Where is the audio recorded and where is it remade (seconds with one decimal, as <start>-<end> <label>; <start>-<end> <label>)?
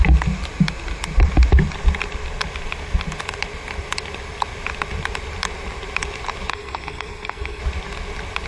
0.0-6.5 recorded; 6.5-7.6 remade; 7.6-8.5 recorded